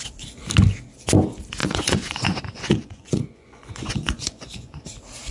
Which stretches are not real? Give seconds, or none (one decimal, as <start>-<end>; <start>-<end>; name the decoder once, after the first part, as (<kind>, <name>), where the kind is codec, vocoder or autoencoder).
1.6-4.8 (vocoder, Vocos)